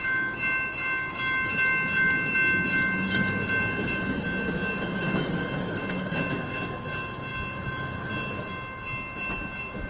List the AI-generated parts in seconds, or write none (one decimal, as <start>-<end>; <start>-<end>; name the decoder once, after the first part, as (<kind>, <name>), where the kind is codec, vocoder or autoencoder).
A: none